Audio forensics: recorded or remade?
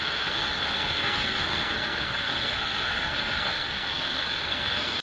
remade